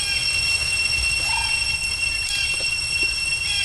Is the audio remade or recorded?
recorded